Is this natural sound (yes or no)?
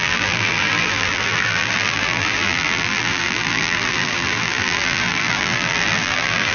no